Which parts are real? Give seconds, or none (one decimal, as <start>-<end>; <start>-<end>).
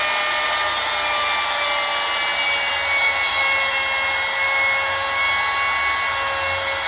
0.0-6.9